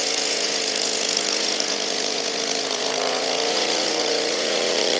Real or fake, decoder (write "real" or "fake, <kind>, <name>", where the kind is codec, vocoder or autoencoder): fake, vocoder, Vocos